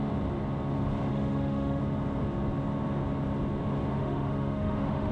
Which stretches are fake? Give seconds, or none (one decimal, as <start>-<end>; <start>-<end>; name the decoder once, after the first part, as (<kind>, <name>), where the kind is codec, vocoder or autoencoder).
1.1-1.8 (autoencoder, DAC-VAE); 3.9-5.1

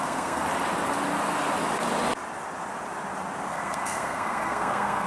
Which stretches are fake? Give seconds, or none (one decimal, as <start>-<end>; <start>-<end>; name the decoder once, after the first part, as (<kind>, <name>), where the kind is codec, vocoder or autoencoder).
0.0-0.4 (codec, SNAC); 3.5-5.1

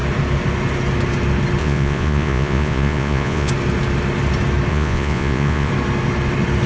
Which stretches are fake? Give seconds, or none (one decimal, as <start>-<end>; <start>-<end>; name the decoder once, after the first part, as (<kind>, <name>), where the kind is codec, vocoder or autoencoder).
1.6-3.5 (vocoder, Vocos); 4.7-5.7

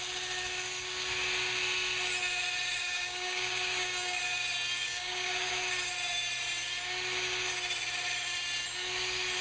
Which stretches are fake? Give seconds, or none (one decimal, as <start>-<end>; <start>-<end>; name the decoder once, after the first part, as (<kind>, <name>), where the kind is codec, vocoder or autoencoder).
2.8-4.2 (codec, DAC); 4.8-5.5

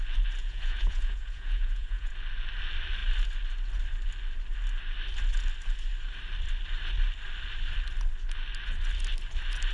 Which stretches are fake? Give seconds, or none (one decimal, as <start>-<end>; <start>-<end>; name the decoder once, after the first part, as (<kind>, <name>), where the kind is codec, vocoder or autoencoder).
0.4-2.1 (vocoder, Vocos)

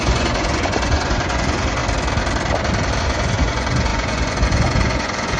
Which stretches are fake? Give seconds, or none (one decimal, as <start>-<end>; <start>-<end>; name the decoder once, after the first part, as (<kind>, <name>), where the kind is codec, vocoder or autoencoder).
0.0-1.8 (vocoder, Vocos); 3.0-5.4

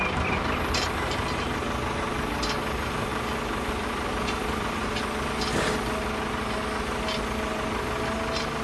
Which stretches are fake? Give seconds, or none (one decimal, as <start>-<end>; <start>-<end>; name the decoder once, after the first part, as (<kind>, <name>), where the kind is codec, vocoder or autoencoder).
0.0-1.6 (vocoder, BigVGAN v2); 2.3-3.1; 3.7-4.8

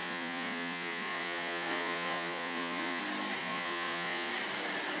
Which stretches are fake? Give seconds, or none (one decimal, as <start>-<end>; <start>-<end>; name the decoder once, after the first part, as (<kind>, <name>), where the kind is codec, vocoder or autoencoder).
0.0-3.0 (vocoder, Vocos); 3.4-4.3